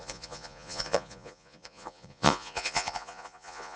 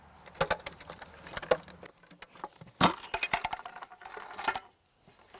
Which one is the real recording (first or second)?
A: second